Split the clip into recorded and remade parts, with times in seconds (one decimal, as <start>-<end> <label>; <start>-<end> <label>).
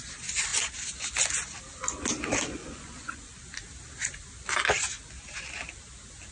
0.0-2.6 recorded; 2.6-3.3 remade; 3.3-6.3 recorded